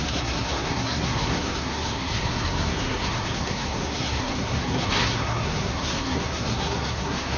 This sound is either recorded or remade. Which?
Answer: remade